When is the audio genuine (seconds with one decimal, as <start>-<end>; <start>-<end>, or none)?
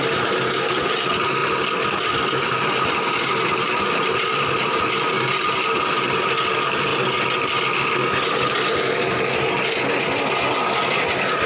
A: 0.0-11.5